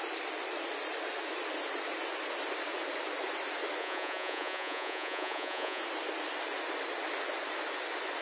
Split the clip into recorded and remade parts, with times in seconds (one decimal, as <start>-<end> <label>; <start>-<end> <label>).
0.0-3.8 recorded; 3.8-5.8 remade; 5.8-8.2 recorded

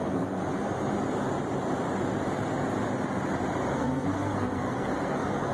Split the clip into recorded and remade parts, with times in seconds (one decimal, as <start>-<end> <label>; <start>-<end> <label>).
0.0-0.4 remade; 0.4-3.7 recorded; 3.7-5.5 remade

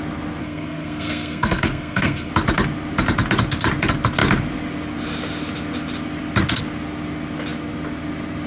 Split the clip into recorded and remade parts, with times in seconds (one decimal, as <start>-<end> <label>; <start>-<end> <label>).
0.0-0.4 recorded; 0.4-2.3 remade; 2.3-8.5 recorded